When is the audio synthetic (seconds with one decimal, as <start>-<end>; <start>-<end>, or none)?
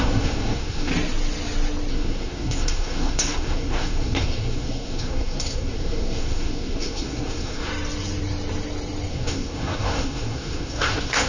0.0-0.9; 1.9-7.7; 9.1-11.3